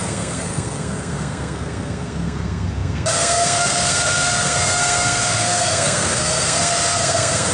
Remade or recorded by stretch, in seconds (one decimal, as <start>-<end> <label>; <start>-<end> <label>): 0.0-7.5 remade